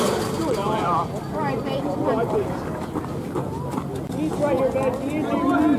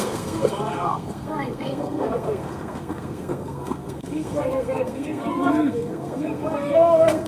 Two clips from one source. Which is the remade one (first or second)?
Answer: second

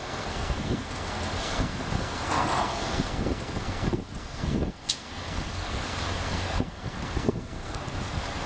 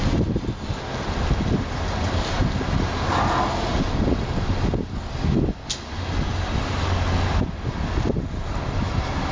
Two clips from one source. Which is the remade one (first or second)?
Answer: first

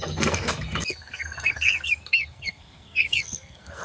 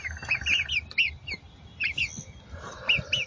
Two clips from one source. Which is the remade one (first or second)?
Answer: first